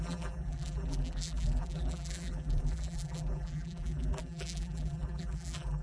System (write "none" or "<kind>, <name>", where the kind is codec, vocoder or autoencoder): vocoder, BigVGAN v2